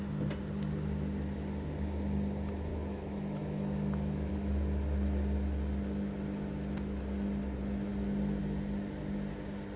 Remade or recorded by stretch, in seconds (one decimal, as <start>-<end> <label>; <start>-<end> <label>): 0.0-2.7 recorded; 2.7-4.3 remade; 4.3-9.8 recorded